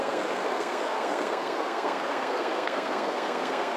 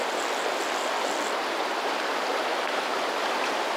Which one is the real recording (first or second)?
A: second